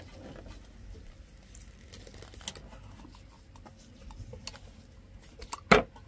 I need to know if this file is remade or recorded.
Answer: recorded